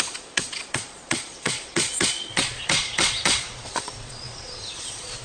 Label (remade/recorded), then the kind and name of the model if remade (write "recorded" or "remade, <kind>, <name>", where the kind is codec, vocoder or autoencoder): remade, vocoder, Vocos